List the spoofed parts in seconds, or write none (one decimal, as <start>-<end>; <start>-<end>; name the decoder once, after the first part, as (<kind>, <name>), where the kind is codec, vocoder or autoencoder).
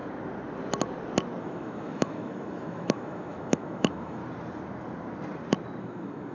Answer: 1.4-4.2 (autoencoder, DAC-VAE); 5.8-6.3